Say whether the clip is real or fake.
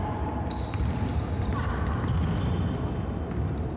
real